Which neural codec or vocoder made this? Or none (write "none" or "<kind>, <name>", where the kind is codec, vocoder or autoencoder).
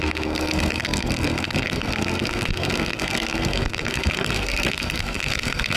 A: codec, SNAC